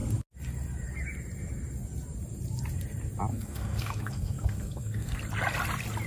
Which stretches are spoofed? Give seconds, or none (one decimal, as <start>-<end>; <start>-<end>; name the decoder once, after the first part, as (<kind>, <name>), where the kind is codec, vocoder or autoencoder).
3.3-5.2 (codec, SNAC)